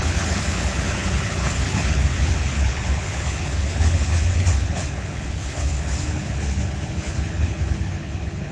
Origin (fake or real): fake